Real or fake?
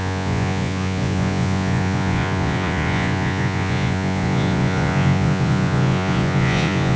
fake